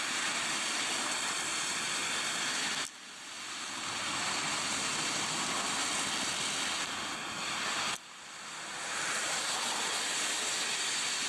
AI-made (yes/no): no